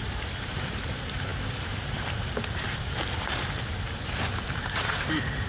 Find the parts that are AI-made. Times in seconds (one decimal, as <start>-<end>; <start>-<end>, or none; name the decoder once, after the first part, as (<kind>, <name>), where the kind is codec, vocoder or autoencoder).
0.0-1.3 (vocoder, BigVGAN v2); 4.6-5.5